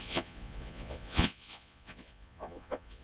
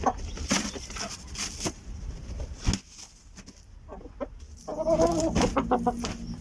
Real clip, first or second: second